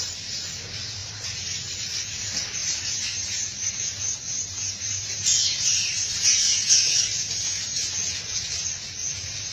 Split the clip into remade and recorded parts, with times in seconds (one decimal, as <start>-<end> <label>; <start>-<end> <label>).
0.0-1.0 recorded; 1.0-1.8 remade; 1.8-2.6 recorded; 2.6-3.7 remade; 3.7-4.3 recorded; 4.3-6.6 remade; 6.6-9.5 recorded